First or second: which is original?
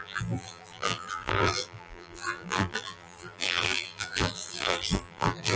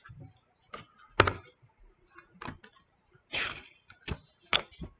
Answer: second